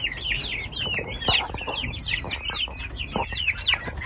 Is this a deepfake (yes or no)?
no